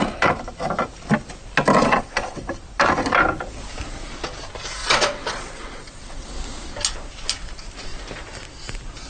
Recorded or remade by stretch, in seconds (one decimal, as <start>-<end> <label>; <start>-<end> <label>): 0.0-1.8 recorded; 1.8-2.5 remade; 2.5-4.8 recorded; 4.8-6.3 remade; 6.3-9.1 recorded